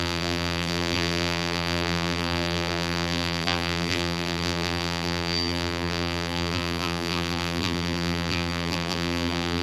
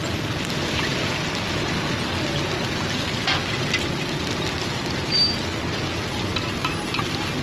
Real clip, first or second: second